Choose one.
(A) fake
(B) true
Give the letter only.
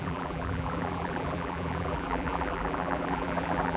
A